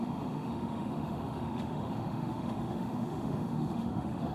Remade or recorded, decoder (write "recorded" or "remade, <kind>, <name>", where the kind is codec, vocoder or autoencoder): remade, autoencoder, DAC-VAE